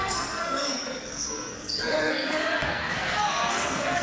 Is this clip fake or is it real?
fake